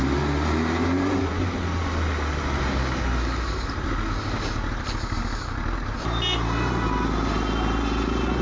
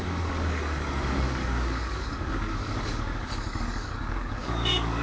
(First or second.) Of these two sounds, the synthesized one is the second